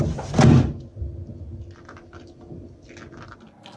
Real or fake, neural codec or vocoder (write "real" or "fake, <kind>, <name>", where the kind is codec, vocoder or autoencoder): real